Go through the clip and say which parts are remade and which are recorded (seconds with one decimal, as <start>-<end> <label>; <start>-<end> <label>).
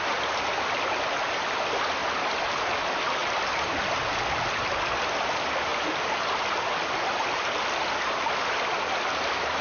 0.0-9.6 recorded